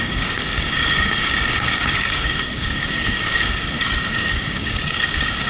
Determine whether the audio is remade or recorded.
remade